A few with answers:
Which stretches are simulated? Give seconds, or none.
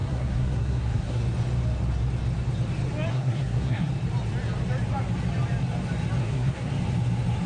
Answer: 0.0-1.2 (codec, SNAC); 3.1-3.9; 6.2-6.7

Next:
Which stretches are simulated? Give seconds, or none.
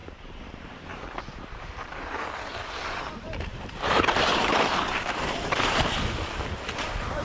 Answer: 0.0-7.2 (vocoder, BigVGAN v2)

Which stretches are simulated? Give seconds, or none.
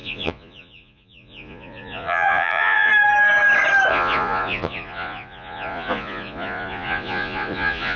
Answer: 0.0-2.9 (vocoder, Vocos); 3.9-8.0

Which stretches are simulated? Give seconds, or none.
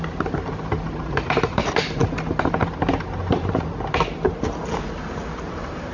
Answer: none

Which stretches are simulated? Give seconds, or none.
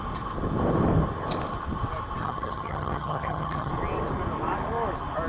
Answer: 2.2-3.7 (vocoder, HiFi-GAN)